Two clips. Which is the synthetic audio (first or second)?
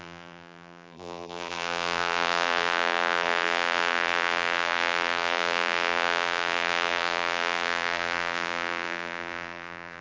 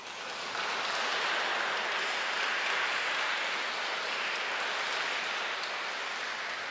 first